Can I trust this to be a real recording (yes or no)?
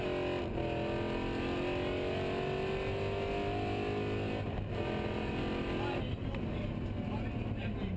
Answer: yes